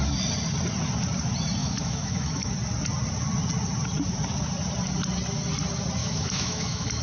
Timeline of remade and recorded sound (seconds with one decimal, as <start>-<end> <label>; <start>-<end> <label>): 0.0-1.6 recorded; 1.6-2.5 remade; 2.5-6.0 recorded; 6.0-7.0 remade